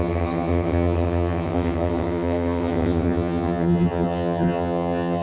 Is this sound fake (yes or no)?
yes